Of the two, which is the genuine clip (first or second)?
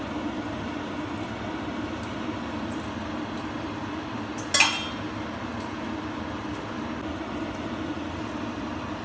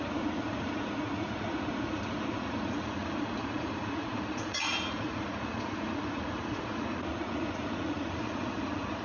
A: first